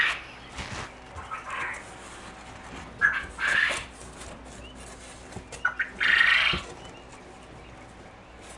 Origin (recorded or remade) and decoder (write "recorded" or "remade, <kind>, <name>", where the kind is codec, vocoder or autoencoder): recorded